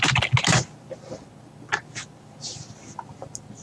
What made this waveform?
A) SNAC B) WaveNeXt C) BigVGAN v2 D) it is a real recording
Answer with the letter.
D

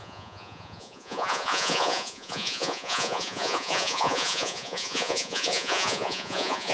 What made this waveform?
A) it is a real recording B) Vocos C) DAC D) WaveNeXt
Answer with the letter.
B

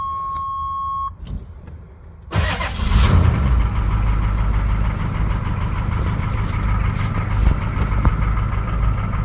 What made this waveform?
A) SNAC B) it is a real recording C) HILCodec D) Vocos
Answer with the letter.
B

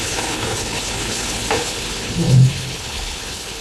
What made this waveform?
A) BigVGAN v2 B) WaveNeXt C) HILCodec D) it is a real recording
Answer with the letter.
C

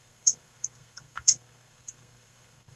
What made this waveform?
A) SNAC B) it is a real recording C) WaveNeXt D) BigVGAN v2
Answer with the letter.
A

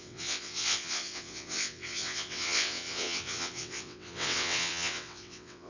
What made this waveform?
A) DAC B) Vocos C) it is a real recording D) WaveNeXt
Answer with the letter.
D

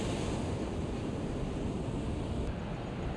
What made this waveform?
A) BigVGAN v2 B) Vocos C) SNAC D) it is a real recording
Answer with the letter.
D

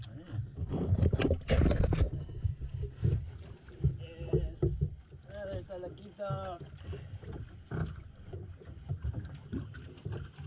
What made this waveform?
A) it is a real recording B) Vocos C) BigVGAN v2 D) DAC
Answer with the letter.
A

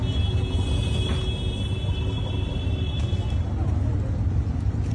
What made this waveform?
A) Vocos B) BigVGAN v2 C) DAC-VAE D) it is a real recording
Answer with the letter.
D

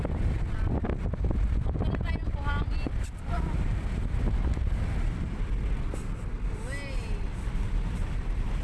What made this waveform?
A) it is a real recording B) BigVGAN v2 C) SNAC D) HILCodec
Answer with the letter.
A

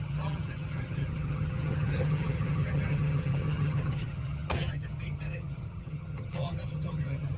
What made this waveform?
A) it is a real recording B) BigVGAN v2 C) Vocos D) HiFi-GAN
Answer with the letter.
D